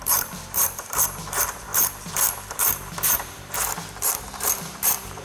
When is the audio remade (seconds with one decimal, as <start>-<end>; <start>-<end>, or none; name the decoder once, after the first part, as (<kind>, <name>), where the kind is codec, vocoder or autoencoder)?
0.0-5.2 (vocoder, BigVGAN v2)